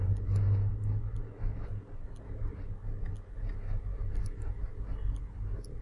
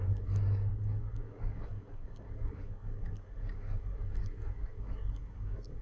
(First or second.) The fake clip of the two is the second